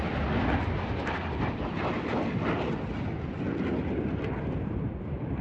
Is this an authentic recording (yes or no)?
yes